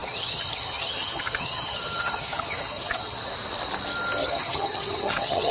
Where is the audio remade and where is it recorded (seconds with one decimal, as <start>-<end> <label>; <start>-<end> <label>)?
0.0-3.3 remade; 3.3-4.2 recorded; 4.2-5.5 remade